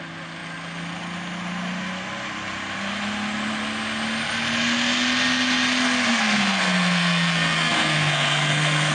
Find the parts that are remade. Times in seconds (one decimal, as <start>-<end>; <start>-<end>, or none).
6.1-8.9